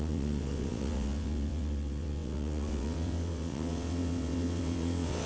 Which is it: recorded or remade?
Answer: remade